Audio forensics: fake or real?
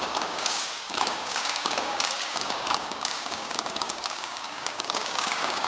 fake